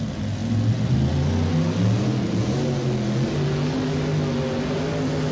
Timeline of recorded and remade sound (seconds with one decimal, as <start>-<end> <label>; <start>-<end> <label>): 0.0-5.3 recorded